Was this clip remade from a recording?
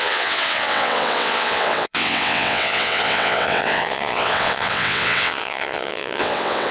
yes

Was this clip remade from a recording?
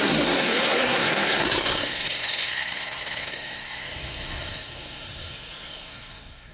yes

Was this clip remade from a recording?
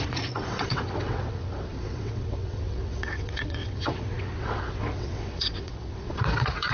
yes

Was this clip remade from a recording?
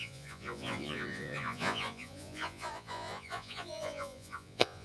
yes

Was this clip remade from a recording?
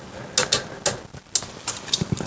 no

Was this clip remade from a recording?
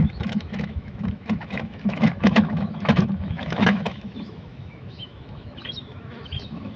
yes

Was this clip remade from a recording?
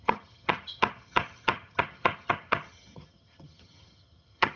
yes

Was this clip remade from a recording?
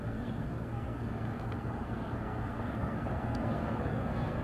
yes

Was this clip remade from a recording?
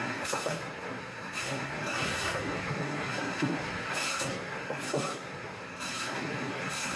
yes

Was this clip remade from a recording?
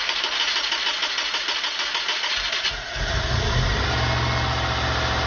no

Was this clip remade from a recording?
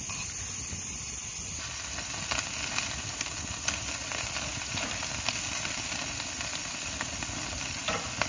no